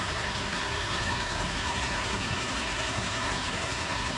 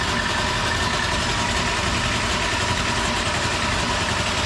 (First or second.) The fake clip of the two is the first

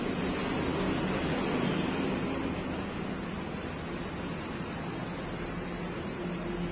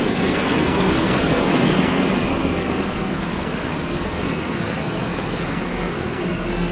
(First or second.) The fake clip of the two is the second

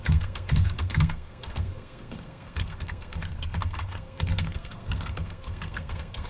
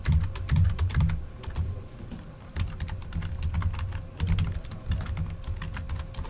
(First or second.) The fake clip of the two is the first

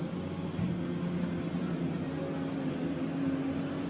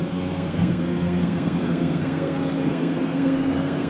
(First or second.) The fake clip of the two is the second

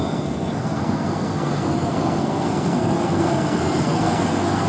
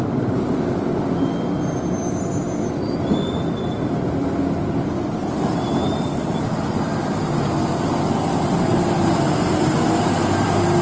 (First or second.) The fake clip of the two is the first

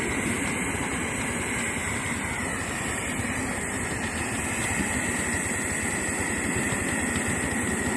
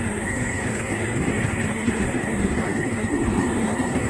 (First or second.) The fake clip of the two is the second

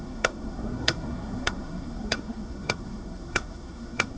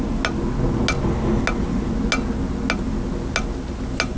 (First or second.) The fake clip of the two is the first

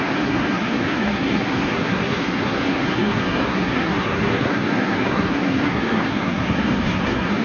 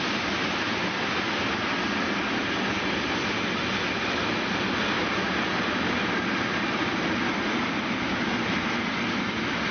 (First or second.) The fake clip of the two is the first